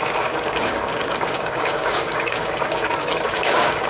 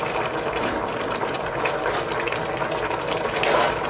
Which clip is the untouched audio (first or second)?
second